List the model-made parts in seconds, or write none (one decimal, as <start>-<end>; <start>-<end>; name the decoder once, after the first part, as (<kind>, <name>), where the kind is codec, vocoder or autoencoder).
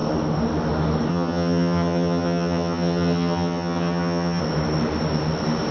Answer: 1.1-4.4 (vocoder, HiFi-GAN)